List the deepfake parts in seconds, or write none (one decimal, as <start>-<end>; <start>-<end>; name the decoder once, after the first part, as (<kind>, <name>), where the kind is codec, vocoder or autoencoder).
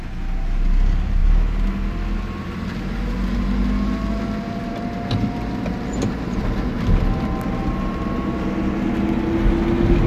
none